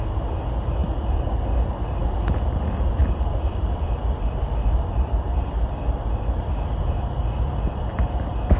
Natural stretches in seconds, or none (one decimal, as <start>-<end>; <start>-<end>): 0.0-3.0; 6.8-8.6